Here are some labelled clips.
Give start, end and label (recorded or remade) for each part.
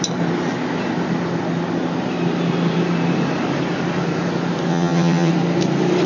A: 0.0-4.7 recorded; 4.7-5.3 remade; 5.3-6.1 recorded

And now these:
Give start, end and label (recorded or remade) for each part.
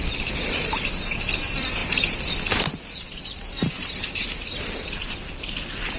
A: 0.0-6.0 recorded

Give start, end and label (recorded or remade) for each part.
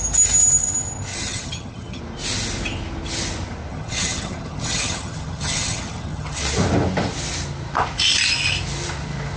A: 0.0-1.1 recorded; 1.1-2.0 remade; 2.0-3.7 recorded; 3.7-6.4 remade; 6.4-9.4 recorded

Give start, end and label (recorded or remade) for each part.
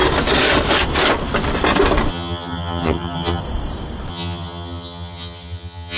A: 0.0-2.1 recorded; 2.1-3.4 remade; 3.4-4.1 recorded; 4.1-6.0 remade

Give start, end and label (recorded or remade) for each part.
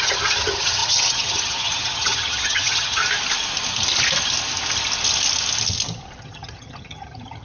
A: 0.0-3.0 remade; 3.0-6.2 recorded; 6.2-7.4 remade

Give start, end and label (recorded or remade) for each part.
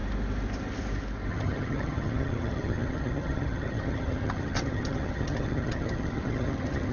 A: 0.0-1.3 recorded; 1.3-6.9 remade